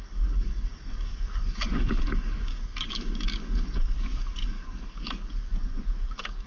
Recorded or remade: remade